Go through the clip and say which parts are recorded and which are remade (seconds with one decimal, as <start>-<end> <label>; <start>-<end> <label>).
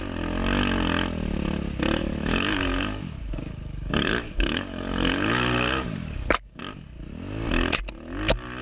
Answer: 0.0-2.0 recorded; 2.0-6.6 remade; 6.6-8.6 recorded